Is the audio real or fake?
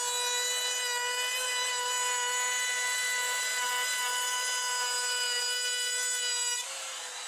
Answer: real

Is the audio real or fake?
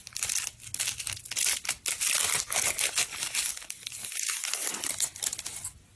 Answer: real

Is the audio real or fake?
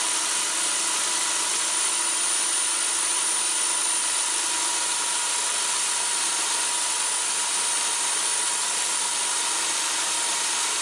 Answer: real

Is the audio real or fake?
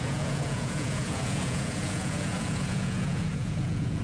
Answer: fake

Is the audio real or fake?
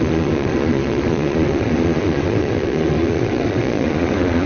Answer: fake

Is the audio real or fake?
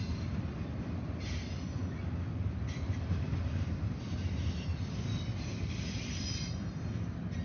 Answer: real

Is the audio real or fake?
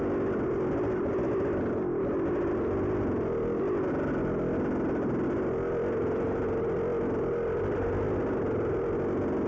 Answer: real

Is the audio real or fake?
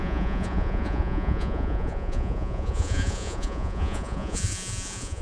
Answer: fake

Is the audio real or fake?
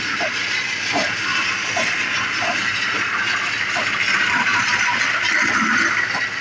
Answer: real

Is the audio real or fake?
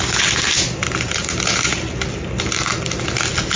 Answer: real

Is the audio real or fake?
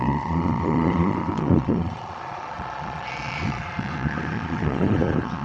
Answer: fake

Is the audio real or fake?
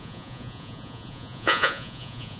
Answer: fake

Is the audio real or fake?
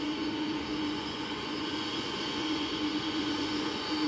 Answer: fake